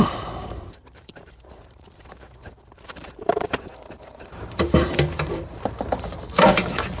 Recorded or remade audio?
remade